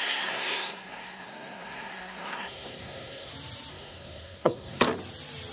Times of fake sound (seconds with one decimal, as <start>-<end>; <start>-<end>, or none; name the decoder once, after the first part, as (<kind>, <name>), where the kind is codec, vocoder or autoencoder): 0.0-3.3 (codec, SNAC); 3.7-4.8